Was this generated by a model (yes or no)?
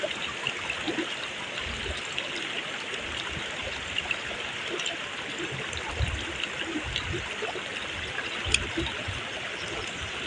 no